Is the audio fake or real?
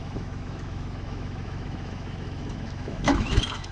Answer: fake